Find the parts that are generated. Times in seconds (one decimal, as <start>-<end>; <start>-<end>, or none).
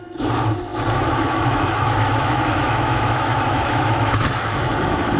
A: 0.0-5.2